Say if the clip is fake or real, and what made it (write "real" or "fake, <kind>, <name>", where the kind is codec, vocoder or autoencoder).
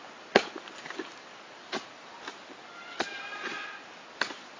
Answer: real